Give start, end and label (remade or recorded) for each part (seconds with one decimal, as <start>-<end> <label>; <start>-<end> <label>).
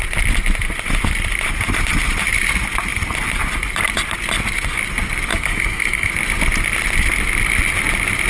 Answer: 0.0-5.3 recorded; 5.3-6.1 remade; 6.1-8.3 recorded